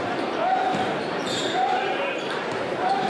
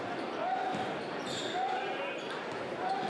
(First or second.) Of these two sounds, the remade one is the first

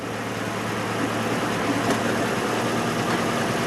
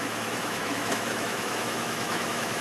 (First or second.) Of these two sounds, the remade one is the second